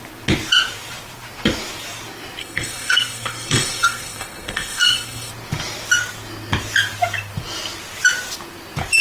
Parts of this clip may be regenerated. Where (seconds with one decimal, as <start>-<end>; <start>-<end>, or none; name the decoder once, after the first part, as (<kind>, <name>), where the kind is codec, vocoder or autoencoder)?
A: 2.4-5.3 (codec, SNAC)

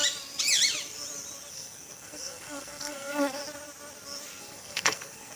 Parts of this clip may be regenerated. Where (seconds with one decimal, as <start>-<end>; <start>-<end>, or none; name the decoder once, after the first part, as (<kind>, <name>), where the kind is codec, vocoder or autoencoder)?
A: 1.5-3.4 (codec, SNAC); 4.4-5.4